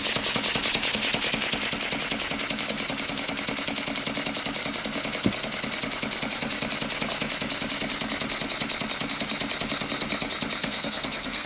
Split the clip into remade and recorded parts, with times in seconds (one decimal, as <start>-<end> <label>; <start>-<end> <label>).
0.0-10.6 recorded; 10.6-11.5 remade